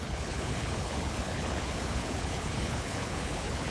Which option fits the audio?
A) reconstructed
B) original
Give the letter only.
A